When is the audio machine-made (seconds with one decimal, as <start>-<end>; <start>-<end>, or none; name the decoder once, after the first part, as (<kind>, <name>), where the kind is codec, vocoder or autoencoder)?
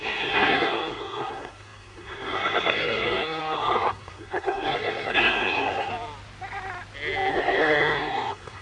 0.0-5.9 (codec, SNAC); 7.3-8.6